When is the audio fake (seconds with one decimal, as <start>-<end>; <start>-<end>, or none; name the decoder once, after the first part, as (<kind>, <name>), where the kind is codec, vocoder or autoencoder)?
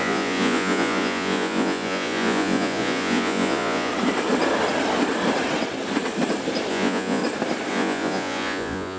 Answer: 0.0-3.9 (vocoder, Vocos); 6.7-7.2; 7.7-9.0